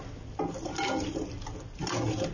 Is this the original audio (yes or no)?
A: yes